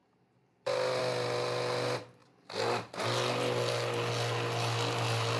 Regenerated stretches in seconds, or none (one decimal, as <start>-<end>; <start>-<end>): 0.0-1.0